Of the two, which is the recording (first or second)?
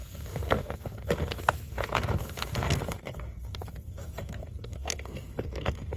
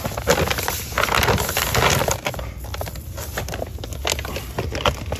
second